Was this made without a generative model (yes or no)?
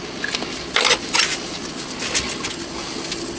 yes